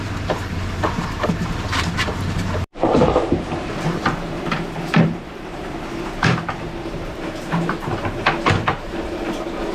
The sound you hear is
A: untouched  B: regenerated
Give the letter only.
B